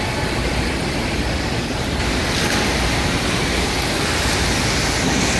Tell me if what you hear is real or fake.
real